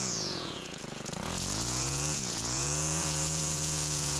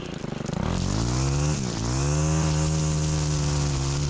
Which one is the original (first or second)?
second